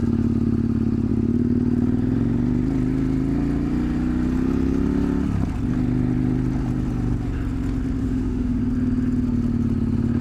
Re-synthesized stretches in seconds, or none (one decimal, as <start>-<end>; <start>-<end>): 8.0-8.6